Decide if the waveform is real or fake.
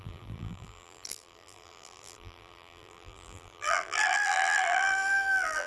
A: fake